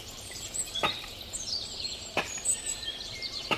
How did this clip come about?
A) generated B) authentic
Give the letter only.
A